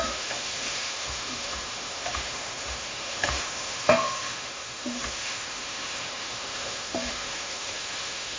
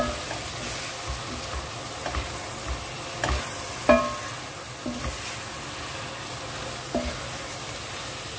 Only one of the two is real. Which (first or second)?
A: second